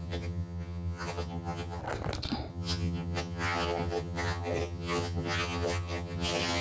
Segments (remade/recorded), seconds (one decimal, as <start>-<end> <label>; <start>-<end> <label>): 0.0-1.8 remade; 1.8-2.5 recorded; 2.5-6.6 remade